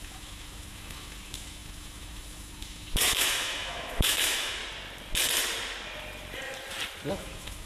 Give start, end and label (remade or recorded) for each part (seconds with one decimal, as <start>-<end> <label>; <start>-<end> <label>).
0.0-4.6 remade; 4.6-7.1 recorded; 7.1-7.7 remade